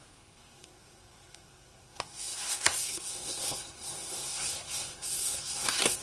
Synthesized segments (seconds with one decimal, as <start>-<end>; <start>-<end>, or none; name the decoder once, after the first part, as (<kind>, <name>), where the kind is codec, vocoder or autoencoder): 0.0-6.0 (codec, SNAC)